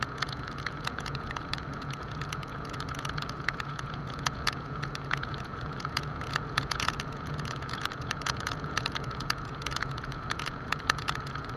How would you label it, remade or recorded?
remade